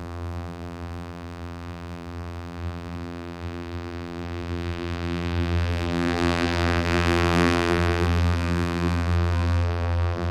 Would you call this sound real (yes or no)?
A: no